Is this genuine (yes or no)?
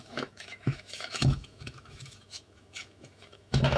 no